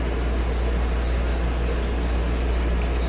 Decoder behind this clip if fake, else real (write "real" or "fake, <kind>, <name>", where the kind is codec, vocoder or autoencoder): real